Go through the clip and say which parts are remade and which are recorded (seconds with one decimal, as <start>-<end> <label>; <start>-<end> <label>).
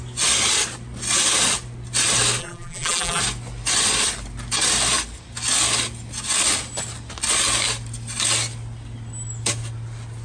0.0-2.4 recorded; 2.4-3.2 remade; 3.2-10.2 recorded